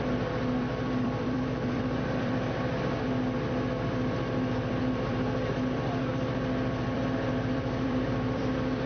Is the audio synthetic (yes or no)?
yes